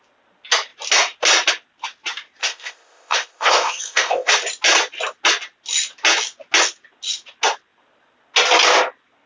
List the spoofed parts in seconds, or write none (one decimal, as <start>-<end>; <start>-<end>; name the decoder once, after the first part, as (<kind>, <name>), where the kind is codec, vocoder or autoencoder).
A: 2.4-4.3 (codec, ZipCodec)